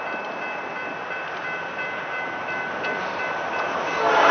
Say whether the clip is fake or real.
real